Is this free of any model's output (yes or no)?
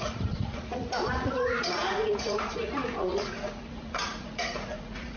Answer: no